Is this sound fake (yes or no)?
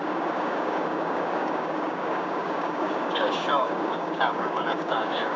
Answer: yes